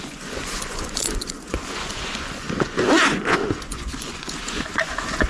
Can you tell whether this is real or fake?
fake